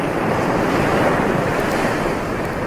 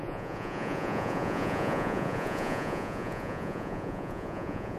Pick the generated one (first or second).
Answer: second